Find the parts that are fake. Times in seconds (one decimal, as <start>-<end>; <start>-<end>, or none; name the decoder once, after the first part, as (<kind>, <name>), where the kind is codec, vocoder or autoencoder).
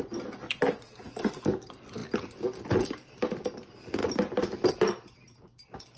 none